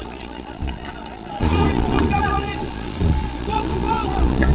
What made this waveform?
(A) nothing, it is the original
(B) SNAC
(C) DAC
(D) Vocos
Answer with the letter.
D